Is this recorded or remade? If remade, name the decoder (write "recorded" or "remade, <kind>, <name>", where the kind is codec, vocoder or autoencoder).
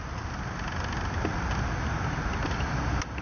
recorded